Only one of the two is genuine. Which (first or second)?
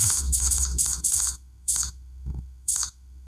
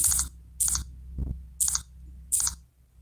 second